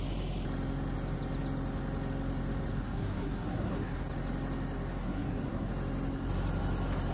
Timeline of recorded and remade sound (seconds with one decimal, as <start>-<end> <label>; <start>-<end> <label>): 0.0-2.8 recorded; 2.8-4.0 remade; 4.0-5.0 recorded; 5.0-5.7 remade; 5.7-7.1 recorded